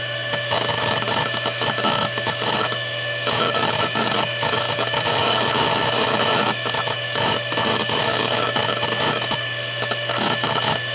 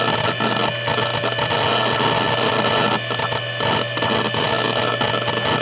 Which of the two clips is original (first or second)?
second